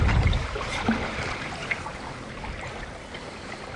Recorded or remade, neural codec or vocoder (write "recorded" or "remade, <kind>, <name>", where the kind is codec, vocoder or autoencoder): recorded